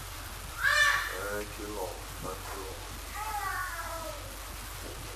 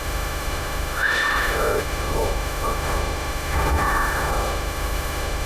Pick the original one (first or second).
first